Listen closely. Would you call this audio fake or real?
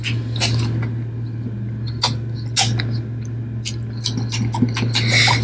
real